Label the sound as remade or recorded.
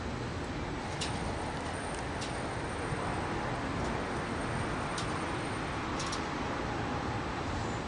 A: recorded